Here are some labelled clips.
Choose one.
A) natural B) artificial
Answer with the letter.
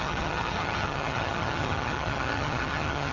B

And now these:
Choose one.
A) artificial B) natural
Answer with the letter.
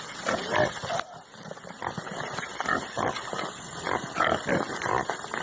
B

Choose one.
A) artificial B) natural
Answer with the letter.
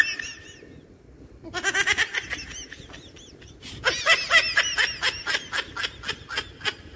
B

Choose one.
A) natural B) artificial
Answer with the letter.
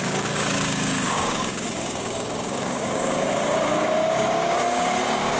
B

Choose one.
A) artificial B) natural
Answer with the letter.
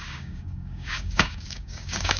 A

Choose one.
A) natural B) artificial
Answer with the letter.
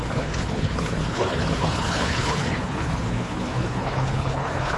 B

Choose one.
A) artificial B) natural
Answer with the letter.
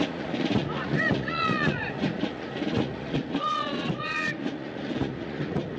A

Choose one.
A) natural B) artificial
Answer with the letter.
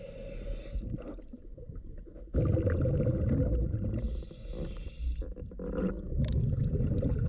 A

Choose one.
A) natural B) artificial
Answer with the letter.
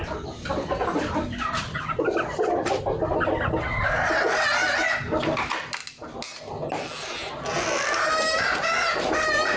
A